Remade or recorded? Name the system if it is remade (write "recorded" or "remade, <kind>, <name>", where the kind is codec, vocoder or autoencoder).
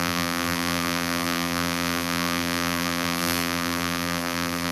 remade, vocoder, BigVGAN v2